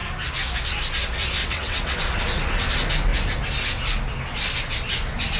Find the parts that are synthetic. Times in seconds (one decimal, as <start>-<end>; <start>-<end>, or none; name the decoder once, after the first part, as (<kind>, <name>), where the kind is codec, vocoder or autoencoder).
1.4-2.0 (vocoder, WaveNeXt)